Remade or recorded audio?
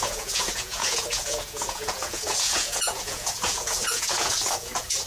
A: remade